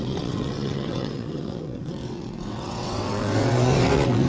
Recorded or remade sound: remade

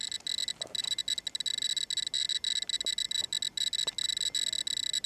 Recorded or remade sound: recorded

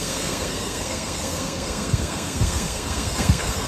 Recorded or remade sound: remade